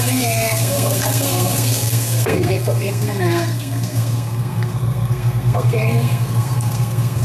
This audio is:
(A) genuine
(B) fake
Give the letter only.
B